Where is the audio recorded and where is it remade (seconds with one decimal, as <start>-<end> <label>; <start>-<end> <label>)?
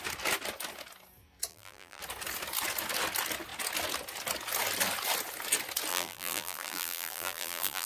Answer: 0.0-1.5 recorded; 1.5-2.0 remade; 2.0-5.9 recorded; 5.9-7.9 remade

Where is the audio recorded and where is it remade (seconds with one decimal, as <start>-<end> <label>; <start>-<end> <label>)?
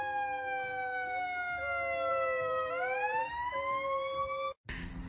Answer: 0.0-2.1 recorded; 2.1-3.5 remade; 3.5-5.1 recorded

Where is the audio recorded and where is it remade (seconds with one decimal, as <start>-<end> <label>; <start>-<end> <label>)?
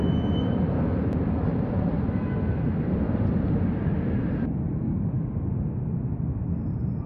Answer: 0.0-1.4 recorded; 1.4-3.2 remade; 3.2-4.2 recorded; 4.2-5.0 remade; 5.0-7.1 recorded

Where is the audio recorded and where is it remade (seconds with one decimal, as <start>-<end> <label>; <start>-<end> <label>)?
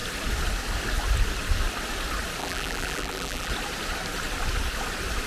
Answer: 0.0-2.4 recorded; 2.4-3.5 remade; 3.5-5.3 recorded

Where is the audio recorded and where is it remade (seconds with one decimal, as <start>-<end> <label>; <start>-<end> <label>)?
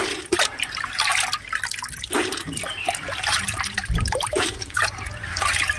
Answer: 0.0-1.1 remade; 1.1-2.2 recorded; 2.2-5.8 remade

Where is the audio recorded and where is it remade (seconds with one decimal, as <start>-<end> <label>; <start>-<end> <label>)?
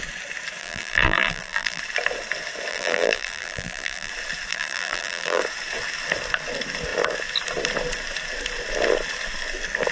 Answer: 0.0-0.6 recorded; 0.6-1.8 remade; 1.8-2.7 recorded; 2.7-4.1 remade; 4.1-4.5 recorded; 4.5-5.4 remade; 5.4-9.9 recorded